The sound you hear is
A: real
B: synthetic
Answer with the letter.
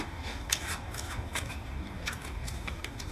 B